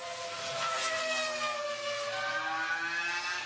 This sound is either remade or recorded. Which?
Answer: recorded